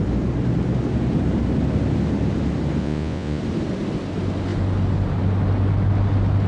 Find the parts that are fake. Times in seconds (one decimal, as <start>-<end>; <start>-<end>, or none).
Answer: 2.8-3.4